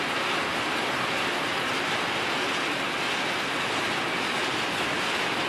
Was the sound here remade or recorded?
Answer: recorded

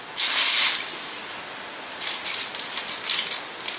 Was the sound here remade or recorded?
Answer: recorded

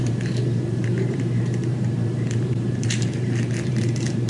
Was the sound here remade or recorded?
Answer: remade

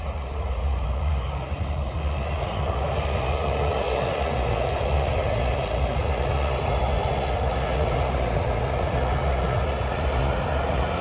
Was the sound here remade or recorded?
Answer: remade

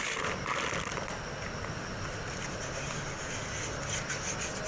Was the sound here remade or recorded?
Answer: recorded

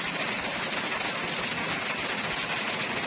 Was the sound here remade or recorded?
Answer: recorded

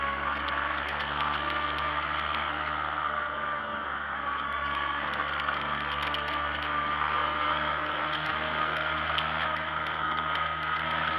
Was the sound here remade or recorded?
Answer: remade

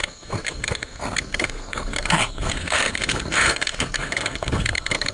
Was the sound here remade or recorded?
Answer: remade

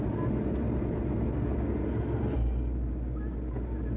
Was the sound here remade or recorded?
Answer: recorded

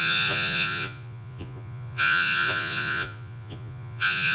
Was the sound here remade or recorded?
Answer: remade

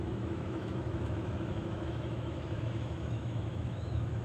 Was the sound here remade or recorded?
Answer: remade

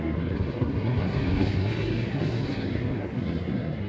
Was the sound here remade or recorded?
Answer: remade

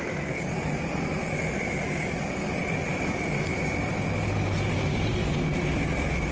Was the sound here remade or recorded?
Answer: recorded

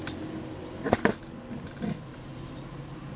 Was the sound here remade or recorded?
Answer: recorded